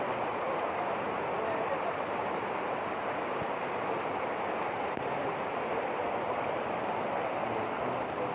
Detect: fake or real real